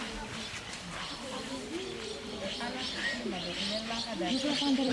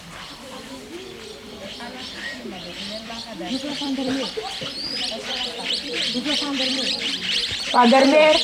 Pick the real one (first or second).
first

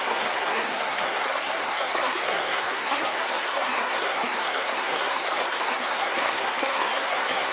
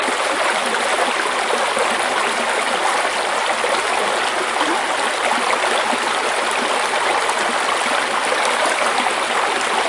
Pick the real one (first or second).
second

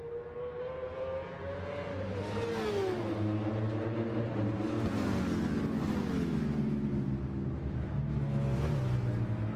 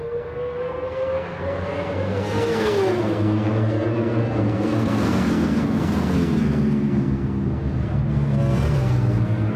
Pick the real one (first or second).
first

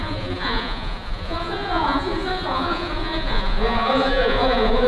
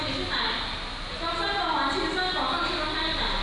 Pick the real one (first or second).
second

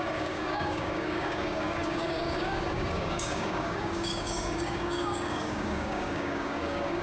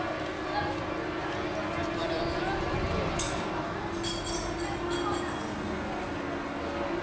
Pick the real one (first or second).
second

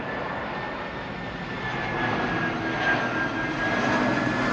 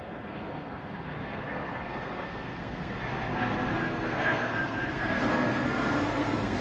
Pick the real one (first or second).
first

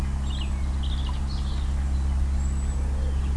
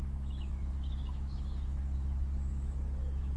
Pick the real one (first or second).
first